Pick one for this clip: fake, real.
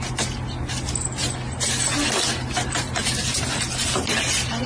real